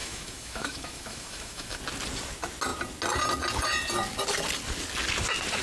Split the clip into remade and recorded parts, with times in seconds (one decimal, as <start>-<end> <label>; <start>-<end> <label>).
0.0-1.8 remade; 1.8-5.6 recorded